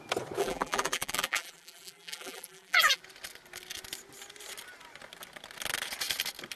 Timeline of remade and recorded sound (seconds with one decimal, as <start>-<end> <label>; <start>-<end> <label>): 0.0-0.4 recorded; 0.4-3.0 remade; 3.0-6.6 recorded

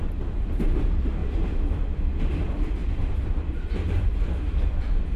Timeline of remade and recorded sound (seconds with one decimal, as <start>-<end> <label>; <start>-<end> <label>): 0.0-1.2 remade; 1.2-2.2 recorded; 2.2-5.2 remade

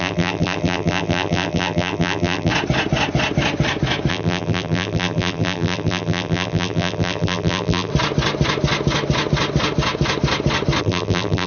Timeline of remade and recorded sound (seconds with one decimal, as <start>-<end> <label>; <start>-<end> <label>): 0.0-2.5 remade; 2.5-4.1 recorded; 4.1-7.9 remade; 7.9-10.8 recorded; 10.8-11.5 remade

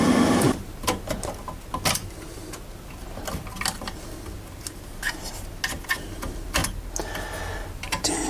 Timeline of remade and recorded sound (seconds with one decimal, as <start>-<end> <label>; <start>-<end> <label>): 0.0-8.3 recorded

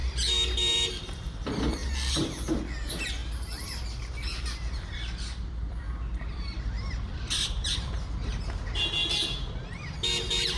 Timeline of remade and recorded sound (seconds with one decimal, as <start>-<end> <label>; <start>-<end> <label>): 0.0-1.4 remade; 1.4-3.2 recorded; 3.2-8.4 remade; 8.4-9.0 recorded; 9.0-9.5 remade; 9.5-10.6 recorded